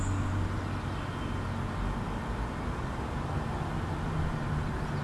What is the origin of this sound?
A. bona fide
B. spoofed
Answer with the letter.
A